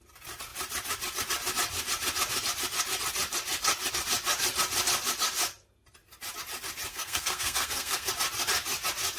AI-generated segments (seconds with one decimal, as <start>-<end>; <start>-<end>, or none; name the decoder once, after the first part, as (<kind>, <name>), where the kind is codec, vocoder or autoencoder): 6.9-8.1 (codec, SNAC)